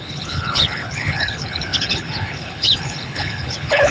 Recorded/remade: remade